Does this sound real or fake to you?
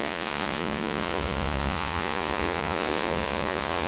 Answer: fake